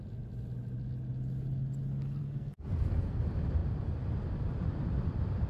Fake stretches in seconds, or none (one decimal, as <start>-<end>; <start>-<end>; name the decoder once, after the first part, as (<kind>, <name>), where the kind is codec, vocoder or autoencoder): 2.2-3.2 (codec, SNAC)

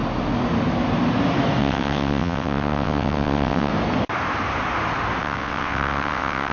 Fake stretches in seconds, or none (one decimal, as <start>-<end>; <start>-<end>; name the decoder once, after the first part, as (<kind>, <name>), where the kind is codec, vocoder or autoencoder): 1.6-3.7 (vocoder, WaveNeXt); 5.2-6.5

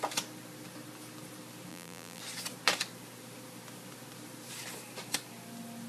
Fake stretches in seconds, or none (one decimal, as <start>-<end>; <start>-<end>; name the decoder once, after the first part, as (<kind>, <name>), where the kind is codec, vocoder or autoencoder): 1.7-2.2 (vocoder, BigVGAN v2)

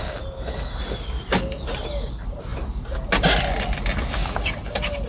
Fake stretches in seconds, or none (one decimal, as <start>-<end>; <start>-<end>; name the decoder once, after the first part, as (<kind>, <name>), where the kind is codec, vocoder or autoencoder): none